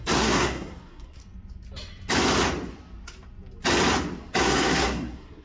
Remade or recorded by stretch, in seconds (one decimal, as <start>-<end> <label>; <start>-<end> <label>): 0.0-1.2 remade; 1.2-4.4 recorded; 4.4-5.4 remade